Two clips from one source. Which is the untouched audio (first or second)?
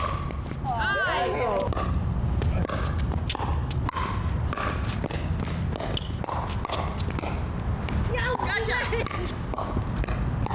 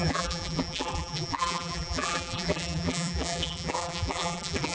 first